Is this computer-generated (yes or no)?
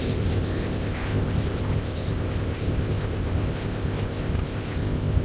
yes